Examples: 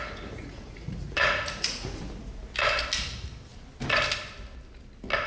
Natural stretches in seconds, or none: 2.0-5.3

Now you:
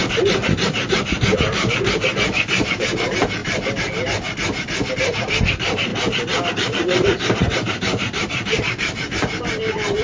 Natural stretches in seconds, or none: 3.4-4.9; 5.9-6.5

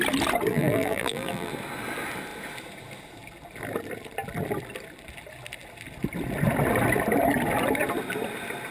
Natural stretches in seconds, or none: 0.0-0.5; 1.5-8.7